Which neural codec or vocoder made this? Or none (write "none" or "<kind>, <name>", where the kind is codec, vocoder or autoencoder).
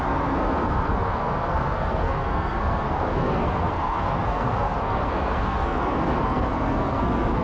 codec, SNAC